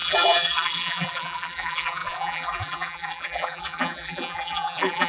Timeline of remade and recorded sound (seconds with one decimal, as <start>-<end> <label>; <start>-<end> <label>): 0.0-5.1 remade